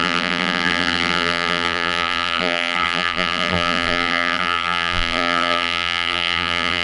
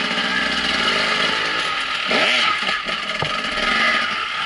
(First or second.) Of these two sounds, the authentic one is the second